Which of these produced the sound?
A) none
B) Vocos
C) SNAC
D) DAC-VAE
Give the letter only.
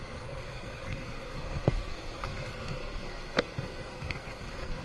C